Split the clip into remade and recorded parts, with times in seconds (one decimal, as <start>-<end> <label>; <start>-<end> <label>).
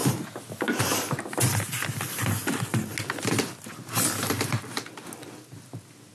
0.0-6.1 recorded